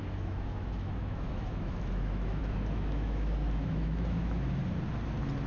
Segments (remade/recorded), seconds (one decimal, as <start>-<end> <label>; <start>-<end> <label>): 0.0-4.6 remade; 4.6-5.5 recorded